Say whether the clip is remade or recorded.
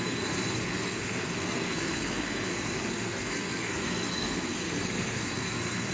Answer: remade